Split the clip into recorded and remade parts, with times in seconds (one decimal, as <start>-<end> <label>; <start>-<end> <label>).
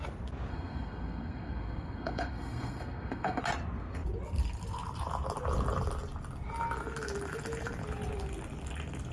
0.0-0.5 recorded; 0.5-3.4 remade; 3.4-9.1 recorded